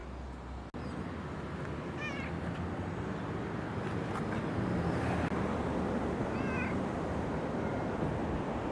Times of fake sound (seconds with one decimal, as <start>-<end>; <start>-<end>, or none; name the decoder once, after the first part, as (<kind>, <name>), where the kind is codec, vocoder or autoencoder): none